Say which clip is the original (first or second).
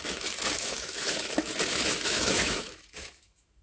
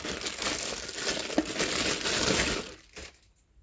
second